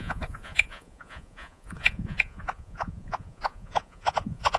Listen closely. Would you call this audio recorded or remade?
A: remade